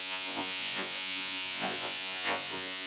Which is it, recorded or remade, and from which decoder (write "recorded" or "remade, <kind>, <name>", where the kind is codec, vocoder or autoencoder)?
remade, vocoder, Vocos